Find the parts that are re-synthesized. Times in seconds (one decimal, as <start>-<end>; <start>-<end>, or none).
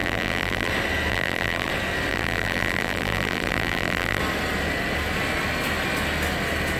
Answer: 0.0-0.7; 1.1-1.7; 2.1-4.2